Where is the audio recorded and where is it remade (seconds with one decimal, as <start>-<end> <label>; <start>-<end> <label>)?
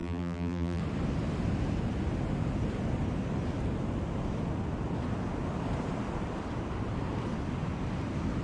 0.0-0.8 remade; 0.8-8.4 recorded